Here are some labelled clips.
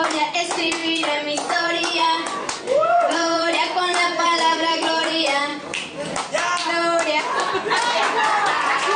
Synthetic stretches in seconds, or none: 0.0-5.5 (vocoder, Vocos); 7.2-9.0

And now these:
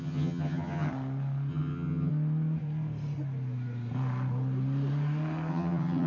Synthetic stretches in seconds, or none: 0.0-0.9 (vocoder, HiFi-GAN); 1.5-2.1; 5.5-6.1

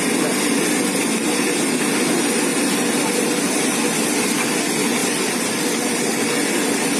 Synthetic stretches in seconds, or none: 2.5-3.5 (vocoder, BigVGAN v2); 5.0-6.0

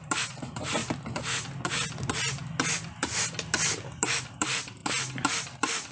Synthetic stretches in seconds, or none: 0.0-0.8 (vocoder, BigVGAN v2); 4.3-4.8